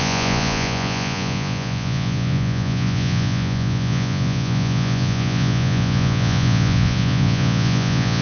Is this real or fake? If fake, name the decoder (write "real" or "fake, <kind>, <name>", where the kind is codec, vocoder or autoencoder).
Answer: fake, vocoder, Vocos